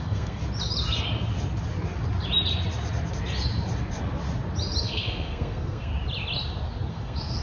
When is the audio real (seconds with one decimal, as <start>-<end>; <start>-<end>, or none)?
0.4-4.8; 5.9-6.9